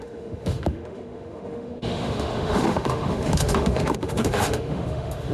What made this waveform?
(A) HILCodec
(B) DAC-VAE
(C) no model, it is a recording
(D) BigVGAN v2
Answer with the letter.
B